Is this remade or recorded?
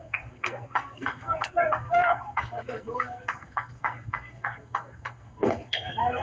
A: remade